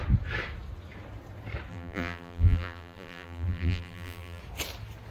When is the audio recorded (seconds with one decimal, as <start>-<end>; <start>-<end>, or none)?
0.0-1.7; 4.4-5.1